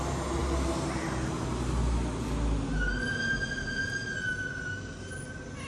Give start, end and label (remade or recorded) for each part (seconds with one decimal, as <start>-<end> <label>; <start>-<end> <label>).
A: 0.0-5.7 recorded